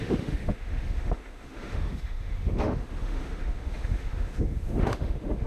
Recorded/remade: remade